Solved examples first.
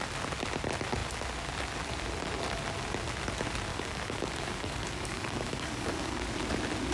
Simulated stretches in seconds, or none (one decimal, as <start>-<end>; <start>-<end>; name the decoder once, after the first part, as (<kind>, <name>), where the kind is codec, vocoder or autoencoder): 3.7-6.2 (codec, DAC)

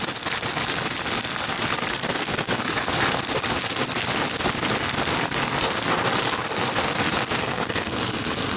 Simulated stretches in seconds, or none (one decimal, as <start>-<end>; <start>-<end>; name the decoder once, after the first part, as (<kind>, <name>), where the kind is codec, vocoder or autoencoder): 2.0-2.6 (codec, SNAC); 7.4-8.0

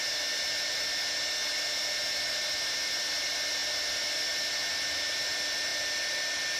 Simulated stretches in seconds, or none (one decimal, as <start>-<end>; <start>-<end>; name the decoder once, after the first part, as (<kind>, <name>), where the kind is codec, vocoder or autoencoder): none

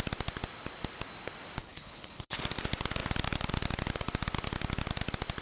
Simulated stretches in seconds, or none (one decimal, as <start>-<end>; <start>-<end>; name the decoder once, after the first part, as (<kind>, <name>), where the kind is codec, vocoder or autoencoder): 1.6-2.4 (codec, HILCodec)

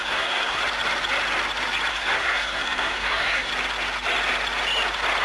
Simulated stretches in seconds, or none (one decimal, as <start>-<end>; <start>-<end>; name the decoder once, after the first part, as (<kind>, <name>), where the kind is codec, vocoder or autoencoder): 0.0-0.6 (codec, SNAC); 1.9-3.5

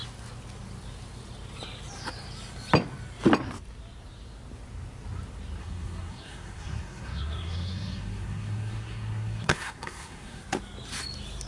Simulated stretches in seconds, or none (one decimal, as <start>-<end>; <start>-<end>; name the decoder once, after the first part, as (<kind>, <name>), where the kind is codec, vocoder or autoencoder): 5.6-10.4 (codec, SNAC)

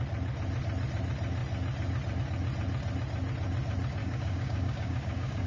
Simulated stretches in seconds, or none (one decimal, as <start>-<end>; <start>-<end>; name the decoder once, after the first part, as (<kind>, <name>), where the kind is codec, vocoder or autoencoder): 4.0-5.5 (codec, DAC)